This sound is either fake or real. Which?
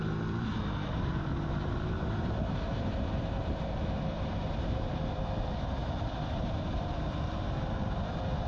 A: fake